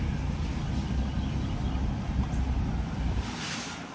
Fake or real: real